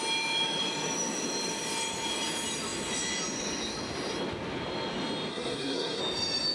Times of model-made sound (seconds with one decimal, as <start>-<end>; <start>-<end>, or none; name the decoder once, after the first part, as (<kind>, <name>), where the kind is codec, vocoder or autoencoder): 5.3-6.0 (codec, SNAC)